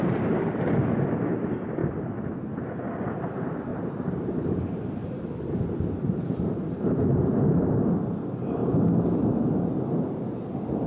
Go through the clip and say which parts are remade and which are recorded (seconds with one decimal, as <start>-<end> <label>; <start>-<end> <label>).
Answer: 0.0-1.8 recorded; 1.8-2.4 remade; 2.4-3.7 recorded; 3.7-7.4 remade; 7.4-10.9 recorded